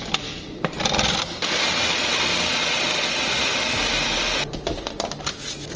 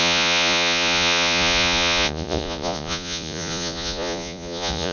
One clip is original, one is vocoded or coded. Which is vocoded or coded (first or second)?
second